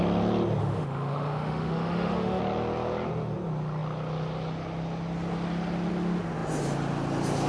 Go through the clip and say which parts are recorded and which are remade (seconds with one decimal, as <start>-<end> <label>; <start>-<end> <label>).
0.0-0.6 recorded; 0.6-2.4 remade; 2.4-7.5 recorded